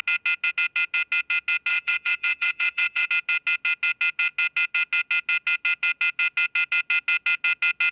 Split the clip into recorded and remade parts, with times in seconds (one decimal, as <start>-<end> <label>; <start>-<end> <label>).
0.0-1.7 recorded; 1.7-3.1 remade; 3.1-7.9 recorded